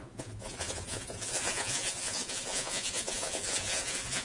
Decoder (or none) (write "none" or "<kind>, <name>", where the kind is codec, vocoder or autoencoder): vocoder, Vocos